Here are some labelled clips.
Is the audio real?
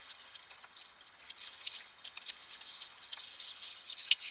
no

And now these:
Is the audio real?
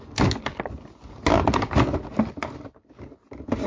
yes